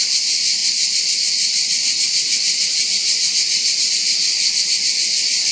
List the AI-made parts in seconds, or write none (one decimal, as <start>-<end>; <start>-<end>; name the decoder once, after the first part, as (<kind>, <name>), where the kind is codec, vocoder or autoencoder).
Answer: 0.0-5.5 (vocoder, BigVGAN v2)